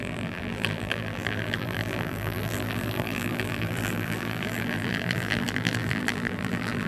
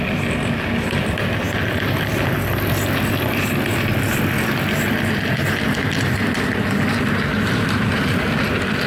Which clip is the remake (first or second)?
first